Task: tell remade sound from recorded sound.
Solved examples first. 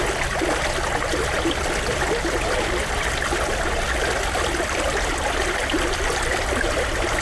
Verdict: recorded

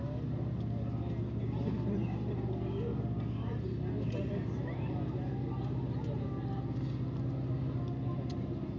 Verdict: recorded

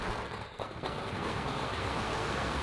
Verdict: remade